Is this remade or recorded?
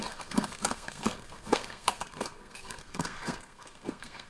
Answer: remade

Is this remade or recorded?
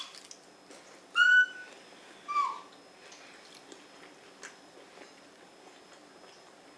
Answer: recorded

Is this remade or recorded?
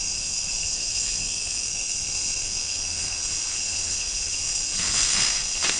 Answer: remade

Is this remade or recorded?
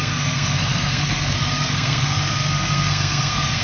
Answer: remade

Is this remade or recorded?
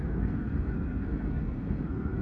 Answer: remade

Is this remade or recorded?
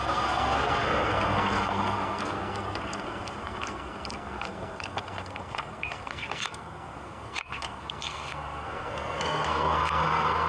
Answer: remade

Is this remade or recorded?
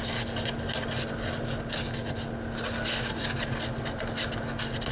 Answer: recorded